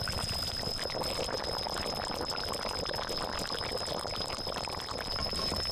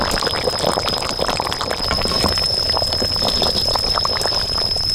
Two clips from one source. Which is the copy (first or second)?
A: second